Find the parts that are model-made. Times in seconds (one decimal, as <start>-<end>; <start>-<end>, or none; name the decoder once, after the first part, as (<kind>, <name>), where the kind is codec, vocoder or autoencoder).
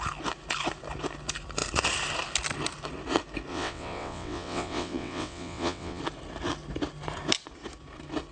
3.5-6.0 (vocoder, WaveNeXt)